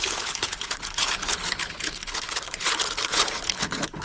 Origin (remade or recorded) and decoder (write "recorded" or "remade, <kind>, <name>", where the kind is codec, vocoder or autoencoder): remade, codec, HILCodec